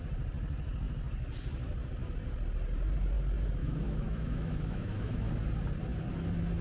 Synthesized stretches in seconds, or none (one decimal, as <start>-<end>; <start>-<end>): 3.6-5.3